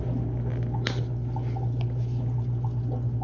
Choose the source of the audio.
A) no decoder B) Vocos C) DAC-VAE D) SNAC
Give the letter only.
A